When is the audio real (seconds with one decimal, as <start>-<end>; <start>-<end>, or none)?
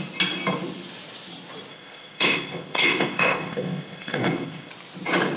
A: 0.0-1.7; 4.7-5.4